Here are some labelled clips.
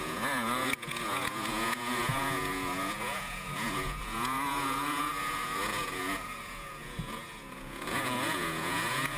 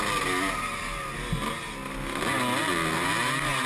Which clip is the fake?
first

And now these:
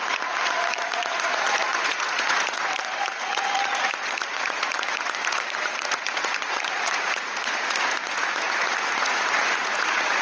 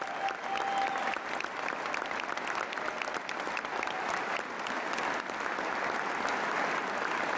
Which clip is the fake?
first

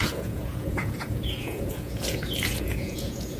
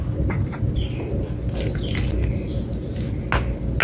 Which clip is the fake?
first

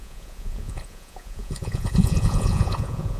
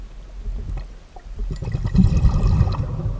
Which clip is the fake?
first